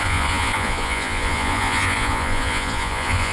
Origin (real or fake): fake